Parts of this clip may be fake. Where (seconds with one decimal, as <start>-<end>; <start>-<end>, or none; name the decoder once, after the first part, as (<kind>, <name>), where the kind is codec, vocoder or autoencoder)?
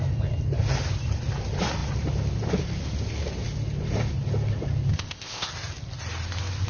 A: 4.9-5.5 (codec, ZipCodec)